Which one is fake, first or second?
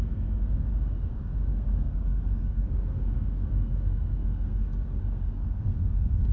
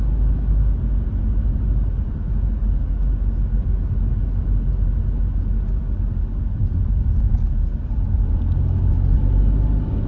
first